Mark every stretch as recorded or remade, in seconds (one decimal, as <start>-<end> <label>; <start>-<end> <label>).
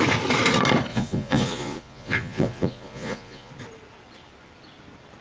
0.0-0.9 recorded; 0.9-3.5 remade; 3.5-5.2 recorded